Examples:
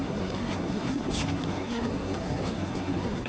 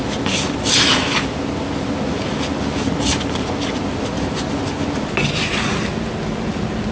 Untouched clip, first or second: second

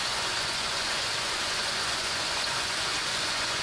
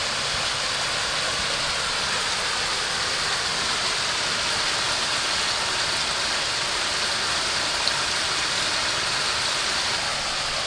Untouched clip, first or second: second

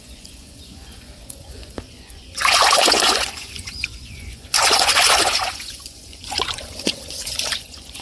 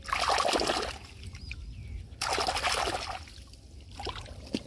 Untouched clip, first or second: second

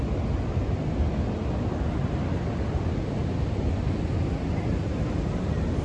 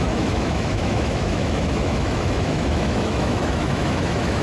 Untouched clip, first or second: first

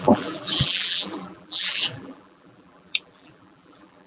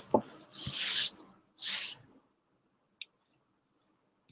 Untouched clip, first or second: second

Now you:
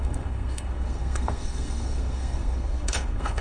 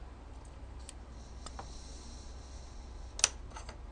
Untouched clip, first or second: second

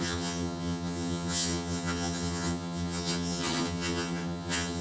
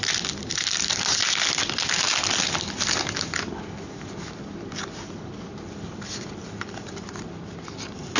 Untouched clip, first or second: second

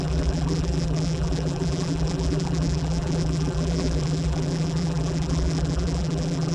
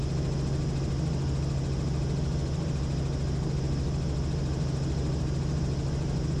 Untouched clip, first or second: second